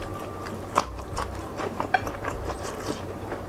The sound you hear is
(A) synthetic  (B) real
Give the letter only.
A